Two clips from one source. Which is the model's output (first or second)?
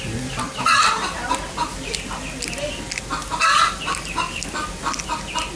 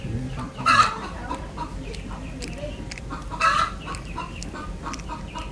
second